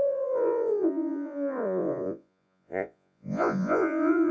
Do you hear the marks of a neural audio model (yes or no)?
yes